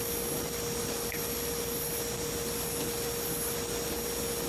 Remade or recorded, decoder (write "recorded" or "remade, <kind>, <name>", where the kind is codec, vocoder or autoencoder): recorded